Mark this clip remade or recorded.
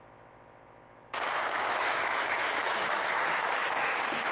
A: remade